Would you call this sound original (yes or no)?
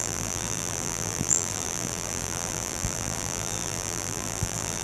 no